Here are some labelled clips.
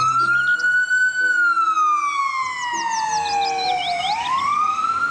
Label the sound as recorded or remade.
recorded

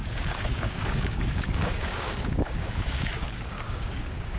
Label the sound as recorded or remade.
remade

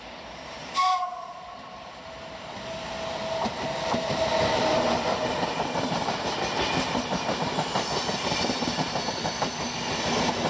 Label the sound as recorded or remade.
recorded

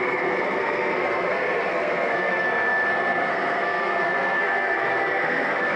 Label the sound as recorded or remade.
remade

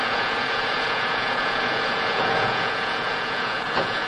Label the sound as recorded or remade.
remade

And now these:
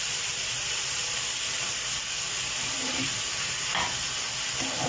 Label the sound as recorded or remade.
recorded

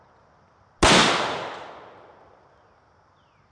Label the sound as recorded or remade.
recorded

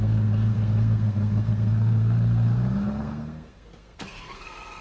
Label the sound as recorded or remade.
remade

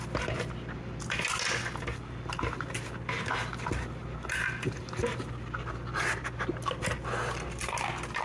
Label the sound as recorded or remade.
recorded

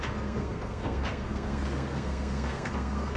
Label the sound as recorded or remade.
remade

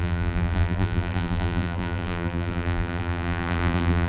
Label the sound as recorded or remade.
remade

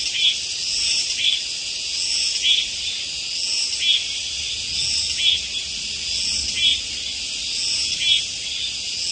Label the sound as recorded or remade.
recorded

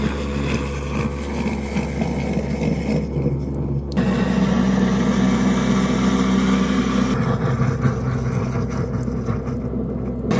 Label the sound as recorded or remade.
recorded